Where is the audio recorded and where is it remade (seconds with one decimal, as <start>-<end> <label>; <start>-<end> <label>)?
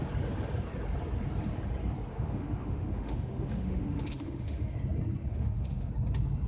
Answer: 0.0-2.1 recorded; 2.1-4.7 remade; 4.7-5.3 recorded; 5.3-5.9 remade; 5.9-6.5 recorded